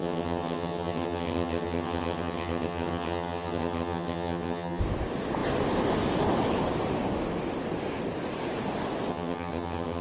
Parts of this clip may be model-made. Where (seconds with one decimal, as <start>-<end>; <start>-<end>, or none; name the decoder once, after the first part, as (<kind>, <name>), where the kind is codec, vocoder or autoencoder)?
0.0-4.8 (vocoder, HiFi-GAN); 9.1-10.0